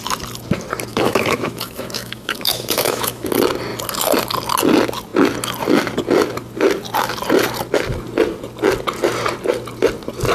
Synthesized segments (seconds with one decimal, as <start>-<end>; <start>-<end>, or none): 0.9-3.3